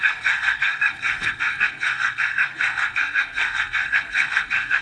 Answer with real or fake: fake